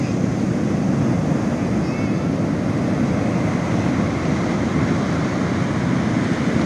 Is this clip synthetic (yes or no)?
no